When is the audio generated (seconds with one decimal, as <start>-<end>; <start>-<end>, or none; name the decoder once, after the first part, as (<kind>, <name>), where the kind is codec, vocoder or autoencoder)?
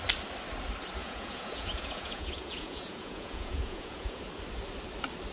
1.0-4.2 (vocoder, Vocos)